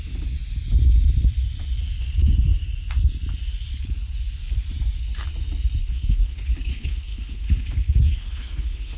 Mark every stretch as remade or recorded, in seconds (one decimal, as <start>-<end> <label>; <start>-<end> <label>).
0.0-5.8 recorded; 5.8-9.0 remade

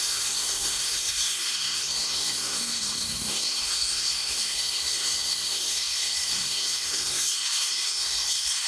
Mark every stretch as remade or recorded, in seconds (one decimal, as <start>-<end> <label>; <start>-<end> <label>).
0.0-8.7 remade

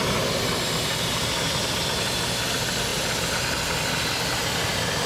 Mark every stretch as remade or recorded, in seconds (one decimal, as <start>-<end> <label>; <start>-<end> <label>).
0.0-1.4 recorded; 1.4-2.1 remade; 2.1-5.1 recorded

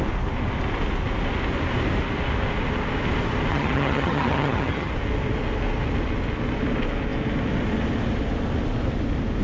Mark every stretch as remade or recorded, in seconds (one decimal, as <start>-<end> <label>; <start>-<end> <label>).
0.0-3.5 recorded; 3.5-4.9 remade; 4.9-9.4 recorded

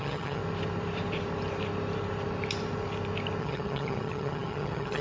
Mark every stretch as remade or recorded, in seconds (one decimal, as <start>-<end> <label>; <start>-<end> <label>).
0.0-0.4 remade; 0.4-3.4 recorded; 3.4-5.0 remade